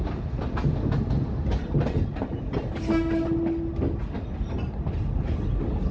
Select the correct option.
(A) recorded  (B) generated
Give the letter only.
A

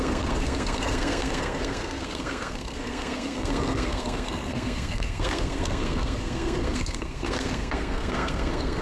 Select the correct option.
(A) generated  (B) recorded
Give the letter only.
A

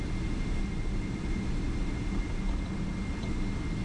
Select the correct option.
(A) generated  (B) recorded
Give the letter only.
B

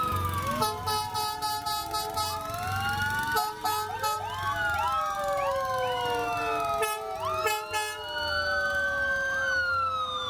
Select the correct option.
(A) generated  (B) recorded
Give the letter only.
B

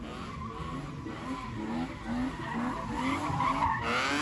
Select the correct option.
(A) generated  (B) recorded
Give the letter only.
B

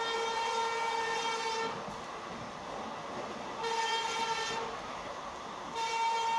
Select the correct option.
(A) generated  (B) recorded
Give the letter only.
B